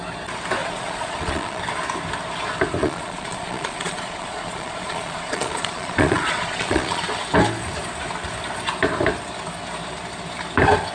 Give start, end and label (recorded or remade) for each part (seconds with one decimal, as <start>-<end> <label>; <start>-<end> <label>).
0.0-0.6 recorded; 0.6-1.6 remade; 1.6-2.8 recorded; 2.8-7.0 remade; 7.0-10.9 recorded